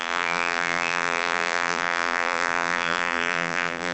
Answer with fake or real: fake